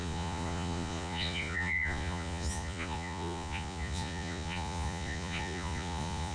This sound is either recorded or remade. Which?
remade